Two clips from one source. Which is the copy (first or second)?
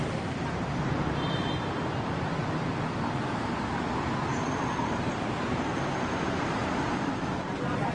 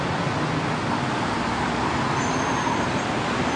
first